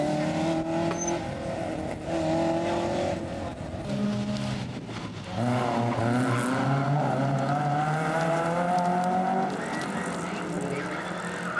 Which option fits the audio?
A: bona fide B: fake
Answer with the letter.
A